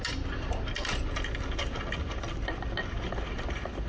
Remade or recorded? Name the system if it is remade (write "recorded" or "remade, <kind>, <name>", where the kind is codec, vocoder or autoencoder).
recorded